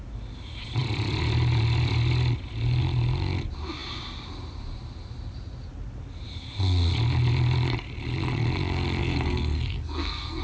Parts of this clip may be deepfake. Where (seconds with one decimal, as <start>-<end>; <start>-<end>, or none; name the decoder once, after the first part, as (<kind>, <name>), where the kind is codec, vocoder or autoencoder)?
9.0-10.4 (codec, SNAC)